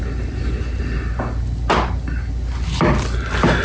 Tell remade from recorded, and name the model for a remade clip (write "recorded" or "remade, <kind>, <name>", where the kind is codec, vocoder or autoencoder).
recorded